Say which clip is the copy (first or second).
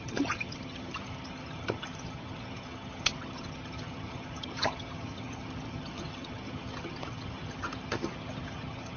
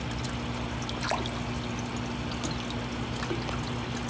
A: first